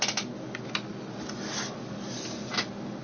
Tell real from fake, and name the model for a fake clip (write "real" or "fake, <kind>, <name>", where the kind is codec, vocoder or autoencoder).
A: real